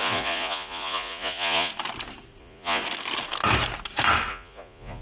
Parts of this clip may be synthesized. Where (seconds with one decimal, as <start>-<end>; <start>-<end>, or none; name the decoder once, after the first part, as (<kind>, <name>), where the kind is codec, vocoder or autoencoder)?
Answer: 0.0-1.7 (vocoder, Vocos); 2.4-2.8; 4.3-5.0